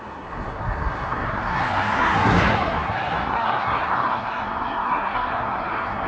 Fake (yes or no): yes